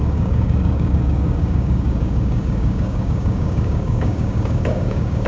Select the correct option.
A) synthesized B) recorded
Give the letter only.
A